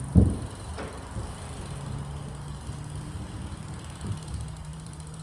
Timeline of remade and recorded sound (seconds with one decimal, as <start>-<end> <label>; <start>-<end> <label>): 0.0-0.7 remade; 0.7-3.8 recorded; 3.8-5.2 remade